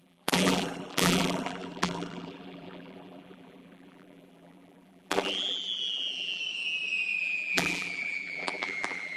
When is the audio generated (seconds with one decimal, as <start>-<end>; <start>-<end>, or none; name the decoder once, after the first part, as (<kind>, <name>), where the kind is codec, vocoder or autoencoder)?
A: 0.0-6.4 (vocoder, BigVGAN v2); 7.2-9.2